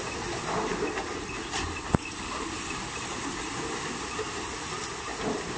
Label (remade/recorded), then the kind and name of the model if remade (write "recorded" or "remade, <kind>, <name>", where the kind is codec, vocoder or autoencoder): recorded